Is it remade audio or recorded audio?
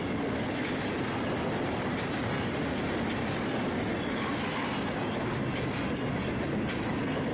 recorded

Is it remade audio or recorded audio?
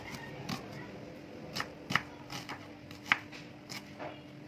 recorded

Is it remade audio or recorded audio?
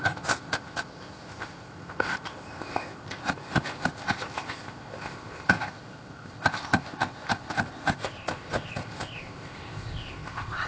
remade